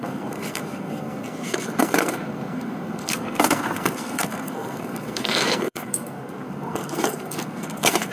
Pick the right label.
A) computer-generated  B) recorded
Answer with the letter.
A